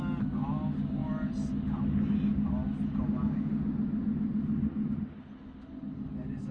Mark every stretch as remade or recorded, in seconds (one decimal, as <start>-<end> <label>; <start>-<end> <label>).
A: 0.0-6.5 recorded